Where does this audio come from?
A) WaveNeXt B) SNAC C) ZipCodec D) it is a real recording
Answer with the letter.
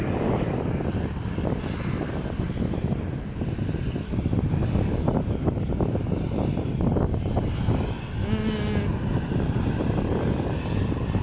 D